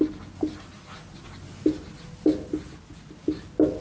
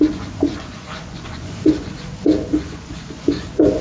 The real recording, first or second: first